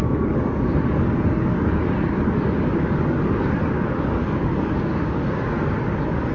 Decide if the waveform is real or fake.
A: fake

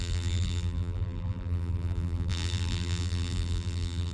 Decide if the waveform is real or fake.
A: fake